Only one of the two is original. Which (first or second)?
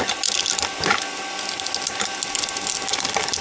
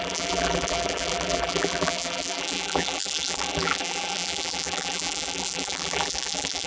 first